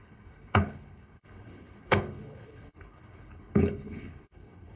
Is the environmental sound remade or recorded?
remade